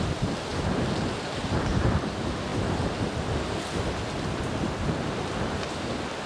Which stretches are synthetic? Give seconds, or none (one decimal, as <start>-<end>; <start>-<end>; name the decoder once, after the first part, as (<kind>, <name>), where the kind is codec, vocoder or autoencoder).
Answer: none